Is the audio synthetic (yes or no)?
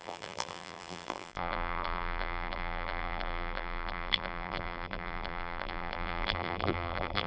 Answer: yes